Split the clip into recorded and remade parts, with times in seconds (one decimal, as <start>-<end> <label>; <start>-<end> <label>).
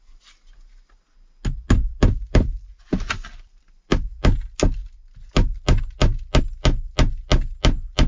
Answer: 0.0-1.8 recorded; 1.8-3.7 remade; 3.7-8.1 recorded